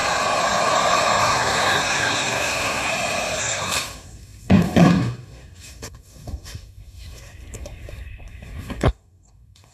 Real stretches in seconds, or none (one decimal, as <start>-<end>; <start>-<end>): 0.0-1.2; 2.9-3.4